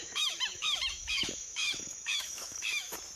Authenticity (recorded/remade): remade